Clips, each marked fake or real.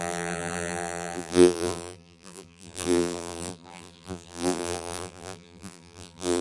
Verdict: fake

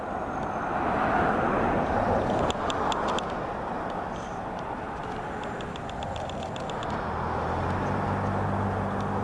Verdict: real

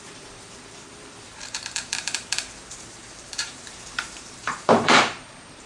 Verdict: fake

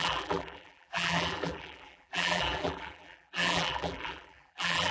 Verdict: fake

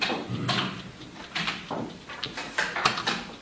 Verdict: fake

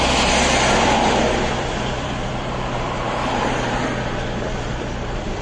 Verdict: fake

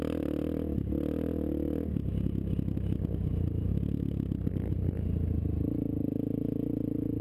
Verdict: real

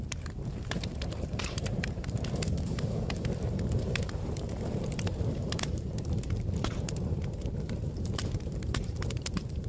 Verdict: fake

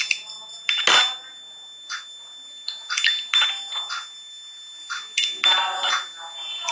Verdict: real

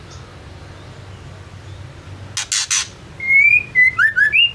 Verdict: real